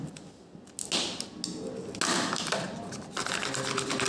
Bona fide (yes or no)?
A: yes